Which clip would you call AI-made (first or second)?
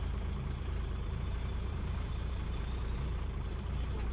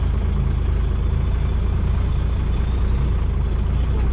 first